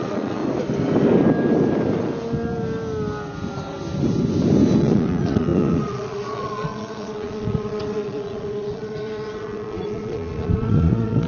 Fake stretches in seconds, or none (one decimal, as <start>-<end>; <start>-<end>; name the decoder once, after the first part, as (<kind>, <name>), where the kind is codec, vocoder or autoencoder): 0.0-0.4 (vocoder, Vocos); 4.8-11.3